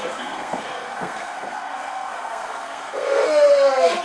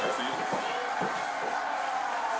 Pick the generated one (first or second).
first